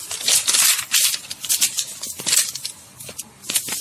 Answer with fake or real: real